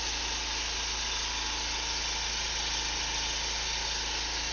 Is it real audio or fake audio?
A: real